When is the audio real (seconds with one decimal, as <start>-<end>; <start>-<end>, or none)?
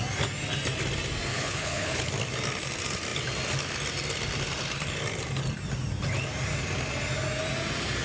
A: 0.0-1.3; 2.1-8.0